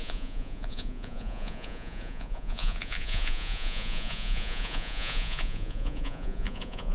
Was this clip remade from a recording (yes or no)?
yes